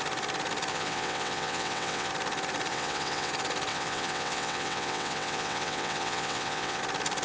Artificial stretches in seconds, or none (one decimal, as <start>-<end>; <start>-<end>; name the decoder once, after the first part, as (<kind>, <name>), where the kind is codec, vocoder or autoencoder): 0.7-2.1 (vocoder, WaveNeXt); 2.7-3.3; 3.7-6.8

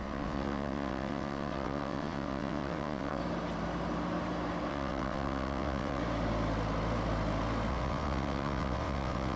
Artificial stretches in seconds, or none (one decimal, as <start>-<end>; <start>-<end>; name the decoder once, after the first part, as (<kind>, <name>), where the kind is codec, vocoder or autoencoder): 0.0-3.2 (vocoder, WaveNeXt); 4.7-6.0; 7.7-9.4

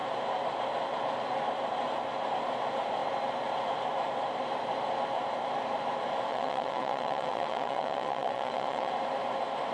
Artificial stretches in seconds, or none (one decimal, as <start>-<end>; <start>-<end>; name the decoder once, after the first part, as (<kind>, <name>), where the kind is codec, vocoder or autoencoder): 6.3-8.9 (vocoder, WaveNeXt)